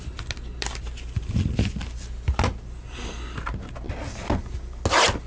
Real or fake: real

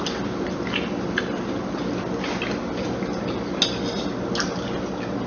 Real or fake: real